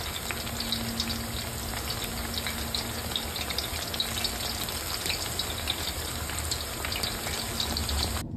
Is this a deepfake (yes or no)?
no